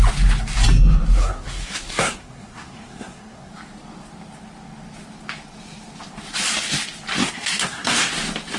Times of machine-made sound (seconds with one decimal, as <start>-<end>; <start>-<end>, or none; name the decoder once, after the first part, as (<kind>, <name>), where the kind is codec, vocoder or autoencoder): 1.2-3.5 (codec, SNAC); 7.2-8.1